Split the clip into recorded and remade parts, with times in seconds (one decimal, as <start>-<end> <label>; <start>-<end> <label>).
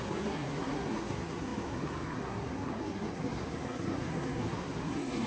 0.0-5.3 remade